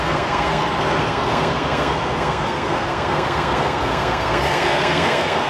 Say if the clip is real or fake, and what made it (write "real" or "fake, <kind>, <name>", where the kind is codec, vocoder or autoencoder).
fake, codec, SNAC